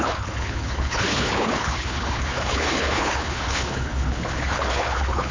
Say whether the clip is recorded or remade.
remade